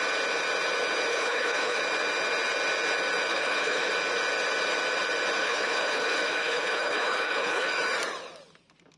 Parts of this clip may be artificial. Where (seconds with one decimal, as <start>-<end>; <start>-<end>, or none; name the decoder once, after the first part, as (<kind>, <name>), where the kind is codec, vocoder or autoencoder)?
1.1-1.8 (codec, HILCodec); 3.3-3.9; 5.4-7.7

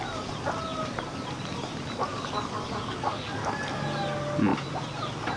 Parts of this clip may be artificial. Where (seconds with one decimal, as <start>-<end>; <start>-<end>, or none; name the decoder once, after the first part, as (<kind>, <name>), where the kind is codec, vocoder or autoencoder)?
2.1-3.5 (codec, DAC)